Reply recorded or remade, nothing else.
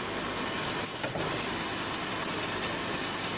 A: recorded